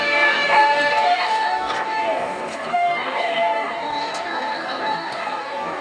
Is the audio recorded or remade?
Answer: remade